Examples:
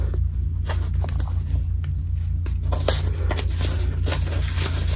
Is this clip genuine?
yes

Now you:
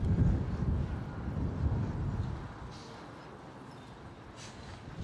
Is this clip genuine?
yes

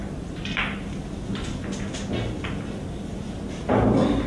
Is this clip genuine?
yes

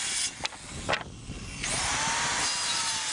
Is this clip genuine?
yes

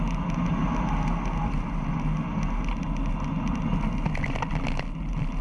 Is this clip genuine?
yes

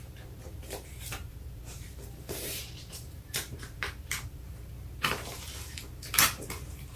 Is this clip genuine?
no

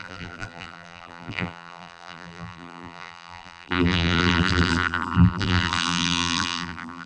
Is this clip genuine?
no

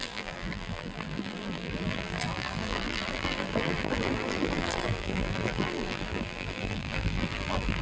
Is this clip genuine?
no